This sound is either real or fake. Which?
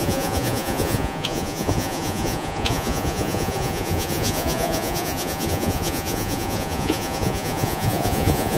fake